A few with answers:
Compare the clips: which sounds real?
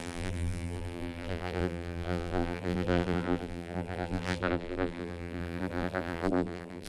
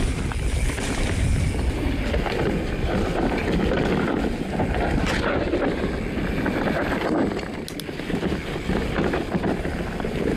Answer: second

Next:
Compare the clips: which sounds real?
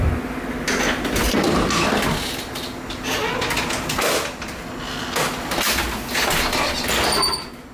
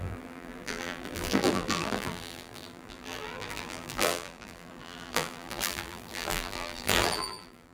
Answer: first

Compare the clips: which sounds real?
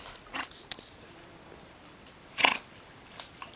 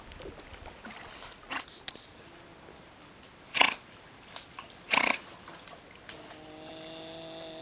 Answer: second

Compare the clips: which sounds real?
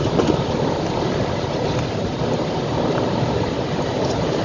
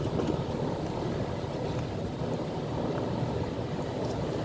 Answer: second